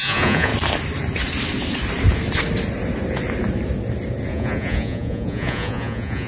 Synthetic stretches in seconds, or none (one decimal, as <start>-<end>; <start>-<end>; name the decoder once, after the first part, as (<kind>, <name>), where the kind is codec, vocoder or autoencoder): 0.0-0.5 (vocoder, Vocos); 4.3-6.3